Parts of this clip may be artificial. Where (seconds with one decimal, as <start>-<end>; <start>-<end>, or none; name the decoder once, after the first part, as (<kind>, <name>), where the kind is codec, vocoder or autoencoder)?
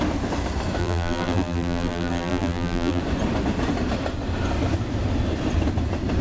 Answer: 0.8-3.0 (vocoder, BigVGAN v2)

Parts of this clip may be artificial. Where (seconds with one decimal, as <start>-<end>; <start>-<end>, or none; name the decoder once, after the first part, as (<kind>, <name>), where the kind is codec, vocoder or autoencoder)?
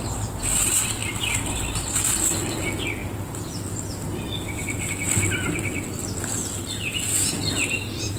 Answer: none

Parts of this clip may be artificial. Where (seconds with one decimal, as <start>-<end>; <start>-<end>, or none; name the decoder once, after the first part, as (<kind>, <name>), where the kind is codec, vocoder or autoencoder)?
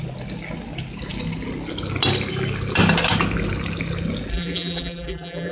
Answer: 4.3-5.5 (vocoder, BigVGAN v2)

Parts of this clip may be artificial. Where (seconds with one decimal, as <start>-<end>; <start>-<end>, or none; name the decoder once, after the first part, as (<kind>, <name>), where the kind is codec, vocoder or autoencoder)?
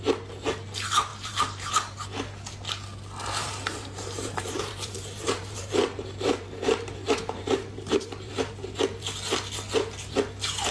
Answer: 1.1-1.7 (vocoder, BigVGAN v2); 3.4-8.5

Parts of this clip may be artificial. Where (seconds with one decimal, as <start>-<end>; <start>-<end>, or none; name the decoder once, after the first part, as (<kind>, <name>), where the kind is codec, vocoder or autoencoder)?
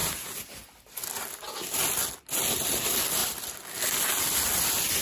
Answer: 0.0-1.0 (vocoder, BigVGAN v2)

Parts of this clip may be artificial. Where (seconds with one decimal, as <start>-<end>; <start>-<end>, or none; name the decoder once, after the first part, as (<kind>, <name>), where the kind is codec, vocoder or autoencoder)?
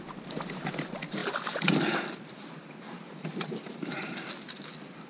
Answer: 1.2-4.3 (vocoder, BigVGAN v2)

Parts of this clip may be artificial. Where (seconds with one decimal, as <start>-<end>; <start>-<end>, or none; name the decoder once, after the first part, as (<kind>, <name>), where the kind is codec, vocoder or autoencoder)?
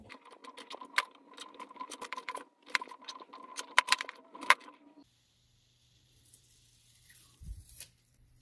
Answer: 0.0-0.4 (vocoder, BigVGAN v2); 1.6-8.4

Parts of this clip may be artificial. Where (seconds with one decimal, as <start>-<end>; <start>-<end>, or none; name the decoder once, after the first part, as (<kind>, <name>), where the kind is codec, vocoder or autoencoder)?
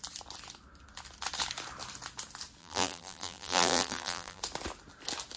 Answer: 2.6-4.4 (vocoder, BigVGAN v2)